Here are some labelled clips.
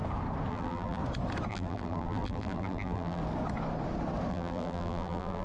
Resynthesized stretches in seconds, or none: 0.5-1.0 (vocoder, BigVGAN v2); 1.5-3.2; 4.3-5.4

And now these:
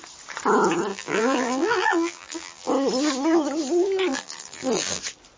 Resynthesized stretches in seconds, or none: 0.9-2.7 (vocoder, BigVGAN v2); 4.1-5.0